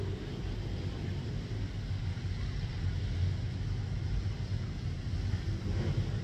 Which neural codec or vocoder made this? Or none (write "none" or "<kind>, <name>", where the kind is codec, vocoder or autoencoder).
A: none